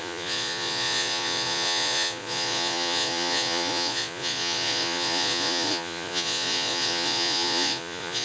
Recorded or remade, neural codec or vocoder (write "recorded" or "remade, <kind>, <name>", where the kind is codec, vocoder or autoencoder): remade, vocoder, Vocos